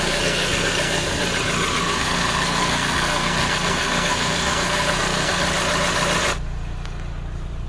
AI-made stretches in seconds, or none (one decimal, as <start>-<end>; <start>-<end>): 0.0-1.2; 1.8-5.4